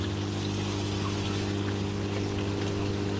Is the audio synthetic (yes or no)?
no